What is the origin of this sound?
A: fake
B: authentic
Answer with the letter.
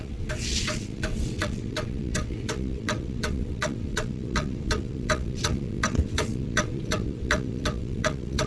A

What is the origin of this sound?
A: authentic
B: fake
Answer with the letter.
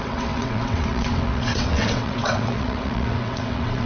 B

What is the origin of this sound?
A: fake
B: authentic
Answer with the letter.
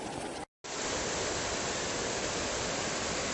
B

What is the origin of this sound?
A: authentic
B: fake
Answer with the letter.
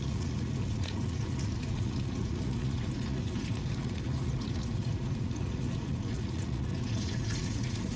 B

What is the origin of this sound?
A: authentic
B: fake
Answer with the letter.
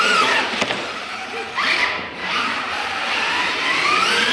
B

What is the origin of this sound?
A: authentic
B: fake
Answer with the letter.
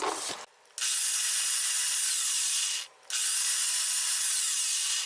A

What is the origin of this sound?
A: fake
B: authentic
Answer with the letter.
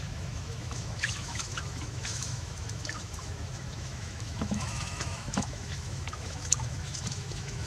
A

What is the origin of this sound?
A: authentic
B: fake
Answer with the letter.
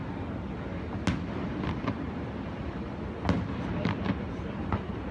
A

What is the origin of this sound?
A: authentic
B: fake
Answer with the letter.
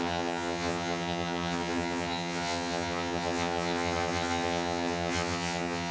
B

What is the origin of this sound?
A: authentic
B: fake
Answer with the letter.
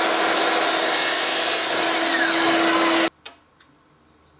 A